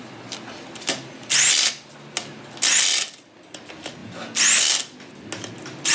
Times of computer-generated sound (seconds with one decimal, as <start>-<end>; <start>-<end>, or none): none